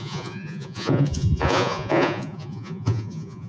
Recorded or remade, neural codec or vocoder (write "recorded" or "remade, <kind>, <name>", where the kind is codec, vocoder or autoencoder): remade, vocoder, Vocos